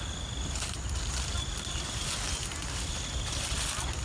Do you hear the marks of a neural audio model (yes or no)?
no